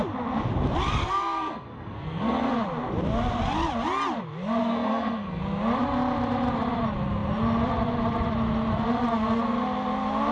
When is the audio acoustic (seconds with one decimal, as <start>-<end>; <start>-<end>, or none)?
0.0-1.0; 2.5-4.6; 5.4-10.3